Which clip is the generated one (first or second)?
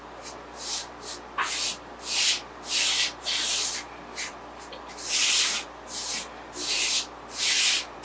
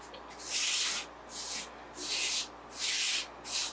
first